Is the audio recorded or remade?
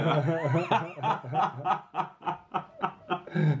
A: recorded